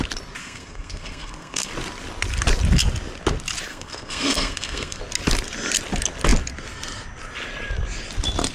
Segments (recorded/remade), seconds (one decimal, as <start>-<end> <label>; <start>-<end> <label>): 0.0-0.4 recorded; 0.4-1.7 remade; 1.7-3.7 recorded; 3.7-5.0 remade; 5.0-8.5 recorded